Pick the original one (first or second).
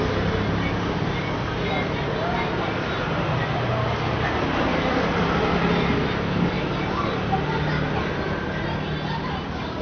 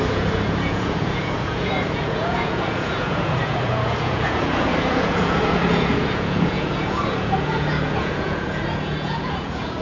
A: first